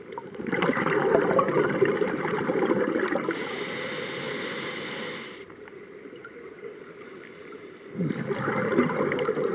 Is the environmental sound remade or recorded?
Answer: recorded